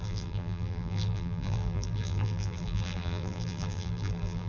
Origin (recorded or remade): remade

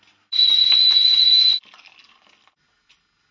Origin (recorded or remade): recorded